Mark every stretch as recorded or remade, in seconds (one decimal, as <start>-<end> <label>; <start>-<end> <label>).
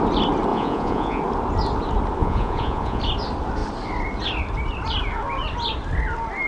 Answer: 0.0-0.5 recorded; 0.5-1.2 remade; 1.2-2.2 recorded; 2.2-3.0 remade; 3.0-6.5 recorded